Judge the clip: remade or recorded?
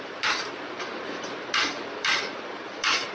remade